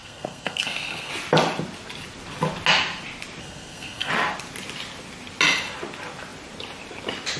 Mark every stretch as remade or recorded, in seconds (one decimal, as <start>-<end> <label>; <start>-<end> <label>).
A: 0.0-1.1 remade; 1.1-3.4 recorded; 3.4-4.1 remade; 4.1-7.4 recorded